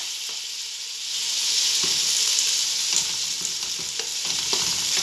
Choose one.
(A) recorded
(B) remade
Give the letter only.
A